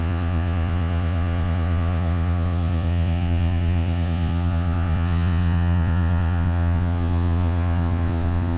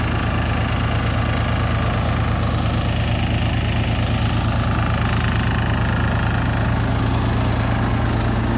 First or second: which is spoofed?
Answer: first